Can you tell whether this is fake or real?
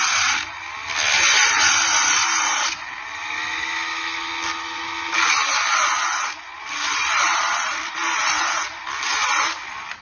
real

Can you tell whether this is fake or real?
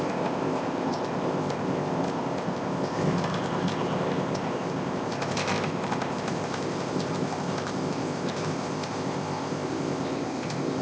fake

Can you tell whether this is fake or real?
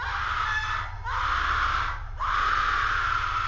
real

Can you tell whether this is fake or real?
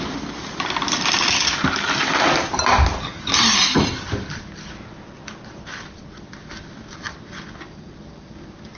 real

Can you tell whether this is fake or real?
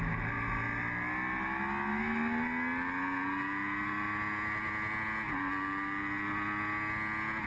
real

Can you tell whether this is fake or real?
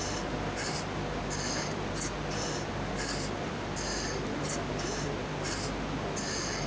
real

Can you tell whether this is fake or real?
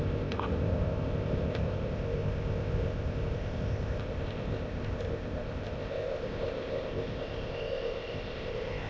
fake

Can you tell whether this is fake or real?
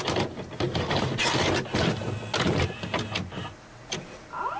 real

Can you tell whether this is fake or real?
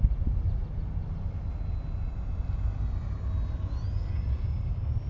real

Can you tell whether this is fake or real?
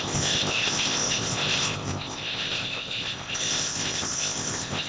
fake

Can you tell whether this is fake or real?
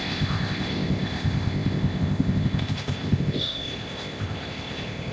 fake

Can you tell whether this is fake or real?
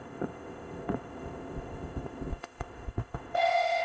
fake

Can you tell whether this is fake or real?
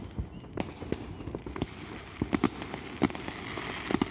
real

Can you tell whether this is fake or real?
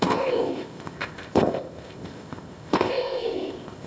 fake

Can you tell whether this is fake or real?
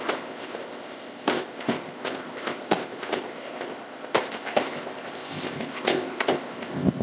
fake